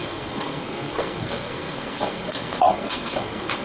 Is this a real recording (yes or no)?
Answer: no